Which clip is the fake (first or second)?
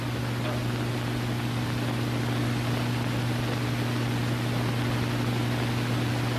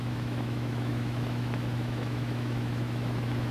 second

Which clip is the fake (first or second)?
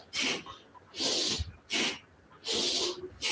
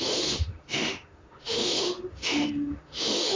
second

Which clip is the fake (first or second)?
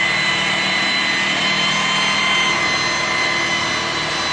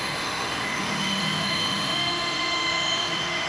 second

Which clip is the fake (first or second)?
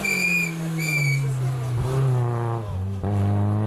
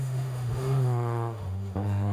second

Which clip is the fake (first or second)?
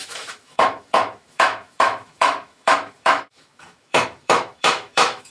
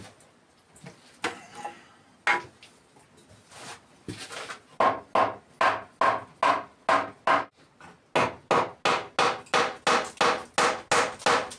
first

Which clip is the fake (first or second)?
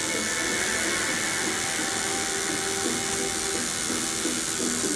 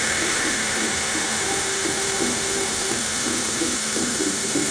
second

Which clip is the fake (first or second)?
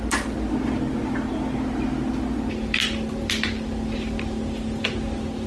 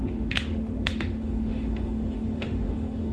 second